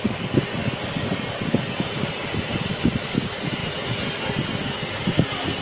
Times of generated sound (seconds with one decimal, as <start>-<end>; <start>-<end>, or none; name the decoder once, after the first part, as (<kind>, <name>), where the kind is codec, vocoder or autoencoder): none